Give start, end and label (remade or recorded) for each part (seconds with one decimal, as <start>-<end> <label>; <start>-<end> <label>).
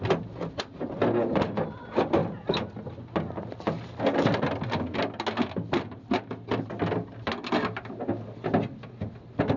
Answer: 0.0-9.6 recorded